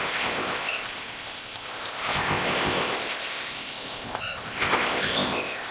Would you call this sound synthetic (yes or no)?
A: yes